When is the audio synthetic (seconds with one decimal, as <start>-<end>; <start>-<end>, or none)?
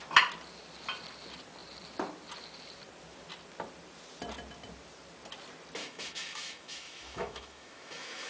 5.8-8.3